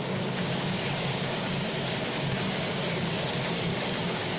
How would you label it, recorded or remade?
remade